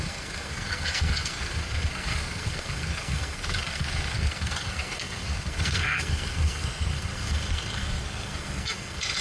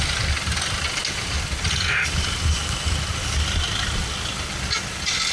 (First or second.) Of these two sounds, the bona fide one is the second